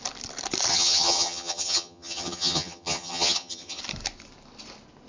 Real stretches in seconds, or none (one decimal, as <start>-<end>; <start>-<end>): 0.0-0.7; 3.8-5.1